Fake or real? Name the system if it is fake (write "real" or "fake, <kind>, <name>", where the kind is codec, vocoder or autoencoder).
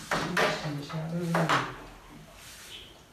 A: real